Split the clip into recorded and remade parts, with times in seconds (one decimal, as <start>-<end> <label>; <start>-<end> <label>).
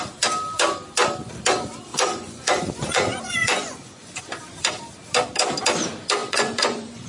0.0-1.9 recorded; 1.9-4.2 remade; 4.2-6.2 recorded; 6.2-7.1 remade